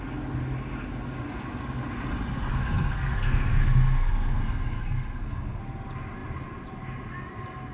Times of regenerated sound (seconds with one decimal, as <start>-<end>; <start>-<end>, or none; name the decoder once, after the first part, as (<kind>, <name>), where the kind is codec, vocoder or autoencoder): 2.5-5.6 (codec, SNAC)